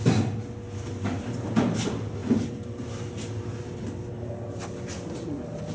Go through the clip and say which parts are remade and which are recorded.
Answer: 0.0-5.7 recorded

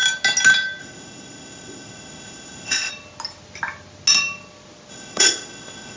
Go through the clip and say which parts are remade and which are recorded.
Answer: 0.0-0.8 recorded; 0.8-2.9 remade; 2.9-4.9 recorded; 4.9-6.0 remade

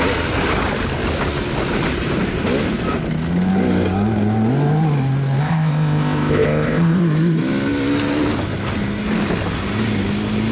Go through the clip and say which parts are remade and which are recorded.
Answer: 0.0-5.4 recorded; 5.4-7.0 remade; 7.0-10.5 recorded

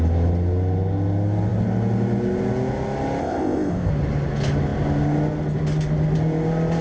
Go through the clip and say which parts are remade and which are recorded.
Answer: 0.0-3.2 recorded; 3.2-3.9 remade; 3.9-6.8 recorded

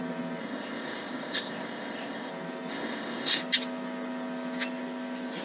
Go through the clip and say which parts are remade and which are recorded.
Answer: 0.0-0.4 recorded; 0.4-2.3 remade; 2.3-2.7 recorded; 2.7-3.4 remade; 3.4-5.4 recorded